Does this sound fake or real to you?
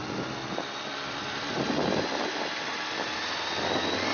real